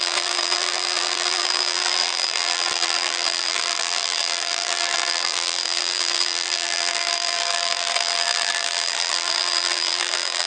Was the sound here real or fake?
fake